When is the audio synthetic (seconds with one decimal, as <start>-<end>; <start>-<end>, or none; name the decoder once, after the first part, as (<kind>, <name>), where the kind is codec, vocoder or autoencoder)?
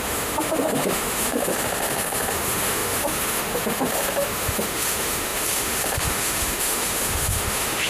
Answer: 0.0-7.9 (autoencoder, DAC-VAE)